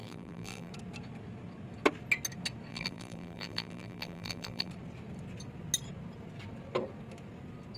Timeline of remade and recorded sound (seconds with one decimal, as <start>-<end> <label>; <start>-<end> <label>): 0.0-0.7 remade; 0.7-2.7 recorded; 2.7-4.7 remade; 4.7-7.8 recorded